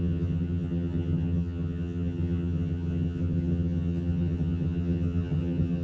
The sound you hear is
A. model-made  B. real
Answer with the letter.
A